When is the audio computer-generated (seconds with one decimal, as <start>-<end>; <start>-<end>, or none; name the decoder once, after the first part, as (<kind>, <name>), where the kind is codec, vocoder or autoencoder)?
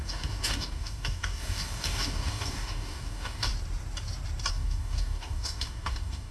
0.0-3.5 (codec, DAC); 4.5-6.3